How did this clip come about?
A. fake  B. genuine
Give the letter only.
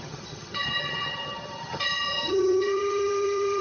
A